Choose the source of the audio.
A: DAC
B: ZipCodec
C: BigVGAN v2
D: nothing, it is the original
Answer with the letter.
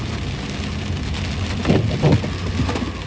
D